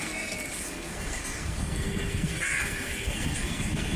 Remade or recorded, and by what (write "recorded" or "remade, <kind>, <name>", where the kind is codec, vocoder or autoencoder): remade, codec, SNAC